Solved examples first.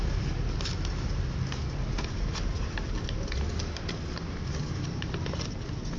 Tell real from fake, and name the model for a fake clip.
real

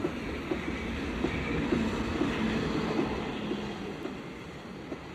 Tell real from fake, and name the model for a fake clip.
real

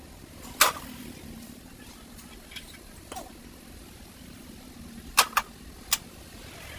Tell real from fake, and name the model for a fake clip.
real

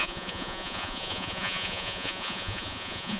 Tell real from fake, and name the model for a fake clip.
fake, vocoder, Vocos